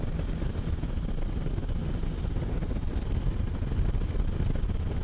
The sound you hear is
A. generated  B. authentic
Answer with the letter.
B